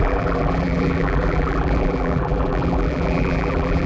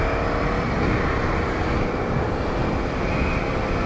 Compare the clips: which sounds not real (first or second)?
first